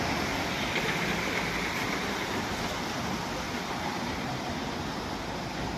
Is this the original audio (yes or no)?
yes